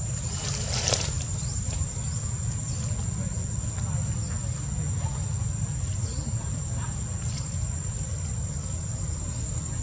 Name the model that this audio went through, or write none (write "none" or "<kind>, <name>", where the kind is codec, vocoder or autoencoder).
none